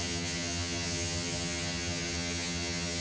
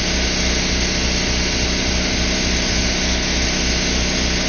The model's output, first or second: first